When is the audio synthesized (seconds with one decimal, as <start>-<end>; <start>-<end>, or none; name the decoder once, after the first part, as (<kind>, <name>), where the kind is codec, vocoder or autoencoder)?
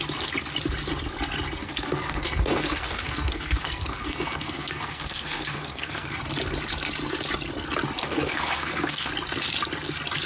1.6-6.2 (codec, SNAC); 8.0-9.1